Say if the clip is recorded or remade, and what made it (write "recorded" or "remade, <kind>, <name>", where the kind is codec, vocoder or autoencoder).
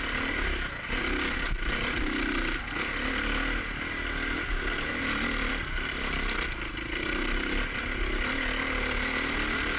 recorded